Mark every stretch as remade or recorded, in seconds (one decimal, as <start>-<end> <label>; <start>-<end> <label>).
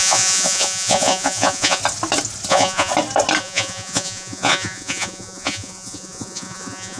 0.0-1.8 remade; 1.8-2.5 recorded; 2.5-2.9 remade; 2.9-3.4 recorded; 3.4-7.0 remade